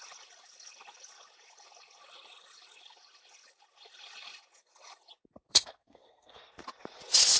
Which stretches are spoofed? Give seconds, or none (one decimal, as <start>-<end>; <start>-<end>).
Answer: 5.5-6.5